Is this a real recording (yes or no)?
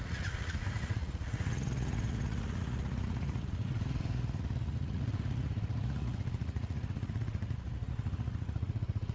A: no